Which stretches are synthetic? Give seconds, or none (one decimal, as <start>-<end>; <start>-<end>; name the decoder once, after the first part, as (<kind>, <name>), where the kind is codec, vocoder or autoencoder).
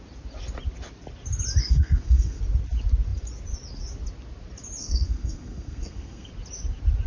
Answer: 1.6-2.4 (codec, SNAC); 4.8-6.3